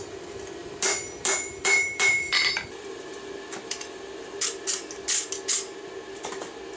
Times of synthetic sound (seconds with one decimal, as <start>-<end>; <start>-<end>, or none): 0.6-4.5